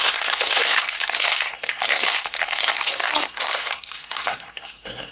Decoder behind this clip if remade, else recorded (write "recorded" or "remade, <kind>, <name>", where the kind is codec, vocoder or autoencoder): remade, codec, SNAC